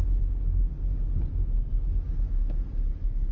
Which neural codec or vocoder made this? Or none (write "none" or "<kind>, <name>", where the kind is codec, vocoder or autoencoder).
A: none